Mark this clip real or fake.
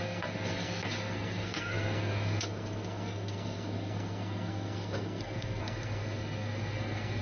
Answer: fake